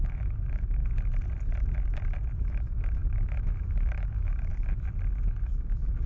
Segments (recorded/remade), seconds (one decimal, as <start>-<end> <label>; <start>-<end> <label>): 0.0-0.8 remade; 0.8-2.5 recorded; 2.5-4.5 remade; 4.5-5.4 recorded; 5.4-6.1 remade